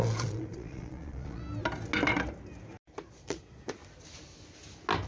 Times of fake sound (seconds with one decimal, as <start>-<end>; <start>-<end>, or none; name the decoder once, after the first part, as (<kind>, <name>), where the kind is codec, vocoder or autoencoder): 0.0-1.4 (vocoder, Vocos); 3.1-3.8